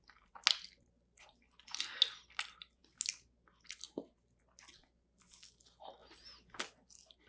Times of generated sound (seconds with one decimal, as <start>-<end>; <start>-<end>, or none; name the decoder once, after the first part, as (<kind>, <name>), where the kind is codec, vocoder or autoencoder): none